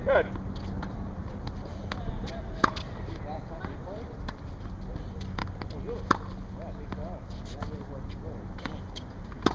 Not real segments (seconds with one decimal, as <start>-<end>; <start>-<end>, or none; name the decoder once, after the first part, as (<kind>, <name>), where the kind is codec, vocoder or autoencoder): none